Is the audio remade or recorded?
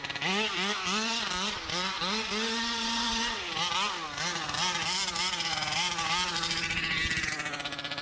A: recorded